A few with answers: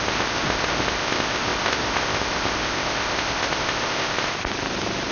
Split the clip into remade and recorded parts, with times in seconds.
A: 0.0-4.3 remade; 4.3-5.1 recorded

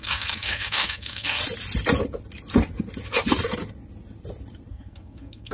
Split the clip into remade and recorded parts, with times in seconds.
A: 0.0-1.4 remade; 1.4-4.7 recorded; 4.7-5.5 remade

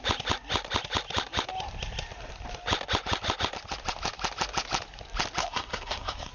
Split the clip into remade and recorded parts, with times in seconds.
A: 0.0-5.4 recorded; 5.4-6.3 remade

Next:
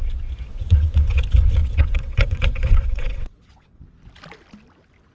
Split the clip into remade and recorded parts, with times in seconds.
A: 0.0-0.5 recorded; 0.5-1.2 remade; 1.2-1.6 recorded; 1.6-3.8 remade; 3.8-5.1 recorded

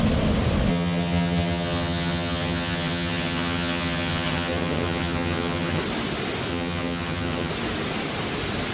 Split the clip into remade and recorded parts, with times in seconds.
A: 0.0-0.7 recorded; 0.7-5.8 remade; 5.8-6.5 recorded; 6.5-7.5 remade; 7.5-8.7 recorded

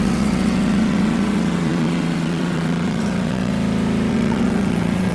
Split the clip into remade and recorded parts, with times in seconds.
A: 0.0-3.5 remade; 3.5-4.1 recorded; 4.1-5.1 remade

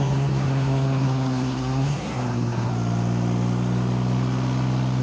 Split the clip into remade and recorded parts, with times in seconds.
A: 0.0-2.7 remade; 2.7-5.0 recorded